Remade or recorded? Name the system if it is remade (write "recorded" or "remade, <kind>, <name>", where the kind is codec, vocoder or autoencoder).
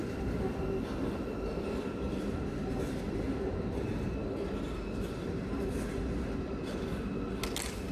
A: recorded